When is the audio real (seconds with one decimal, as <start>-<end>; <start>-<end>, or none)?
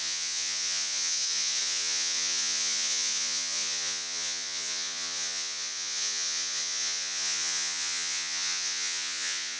none